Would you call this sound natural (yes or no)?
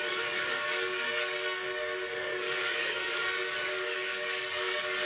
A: no